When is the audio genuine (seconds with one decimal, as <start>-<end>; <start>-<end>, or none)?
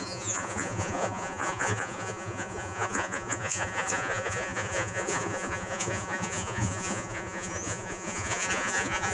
none